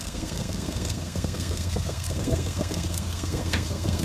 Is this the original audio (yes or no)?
no